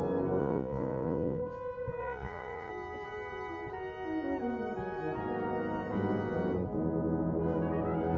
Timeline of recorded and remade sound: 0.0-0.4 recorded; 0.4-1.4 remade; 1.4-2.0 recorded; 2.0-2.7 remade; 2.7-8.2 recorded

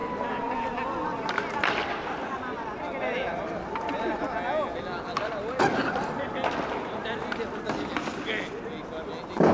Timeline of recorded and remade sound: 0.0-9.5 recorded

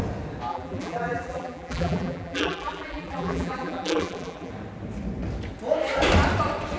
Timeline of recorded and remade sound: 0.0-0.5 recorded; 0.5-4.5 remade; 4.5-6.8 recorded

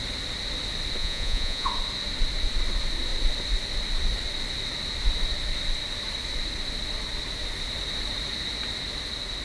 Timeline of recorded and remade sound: 0.0-1.0 recorded; 1.0-1.7 remade; 1.7-9.4 recorded